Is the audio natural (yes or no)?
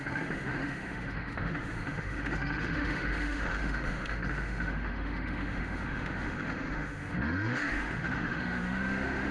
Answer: no